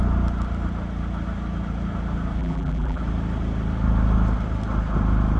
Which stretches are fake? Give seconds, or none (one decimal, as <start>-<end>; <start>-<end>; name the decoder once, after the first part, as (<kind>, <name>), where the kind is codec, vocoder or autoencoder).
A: 2.4-3.0 (vocoder, BigVGAN v2)